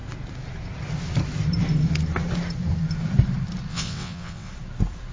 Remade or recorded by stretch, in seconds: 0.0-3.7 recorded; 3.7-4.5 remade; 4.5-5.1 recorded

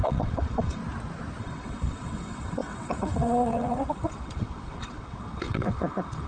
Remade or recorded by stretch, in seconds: 0.0-0.8 remade; 0.8-1.4 recorded; 1.4-6.3 remade

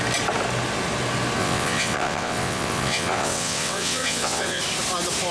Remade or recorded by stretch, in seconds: 0.0-1.4 recorded; 1.4-4.6 remade; 4.6-5.3 recorded

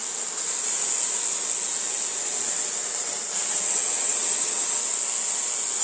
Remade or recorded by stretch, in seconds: 0.0-3.5 recorded; 3.5-4.8 remade; 4.8-5.8 recorded

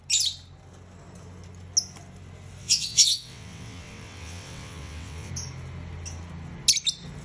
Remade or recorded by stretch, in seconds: 0.0-2.6 recorded; 2.6-5.3 remade; 5.3-7.2 recorded